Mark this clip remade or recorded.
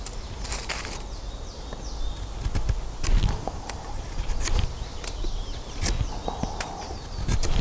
recorded